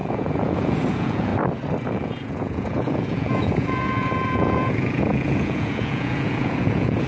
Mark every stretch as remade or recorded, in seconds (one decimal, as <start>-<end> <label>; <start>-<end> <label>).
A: 0.0-1.3 remade; 1.3-1.8 recorded; 1.8-7.1 remade